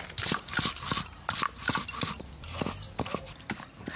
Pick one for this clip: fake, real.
real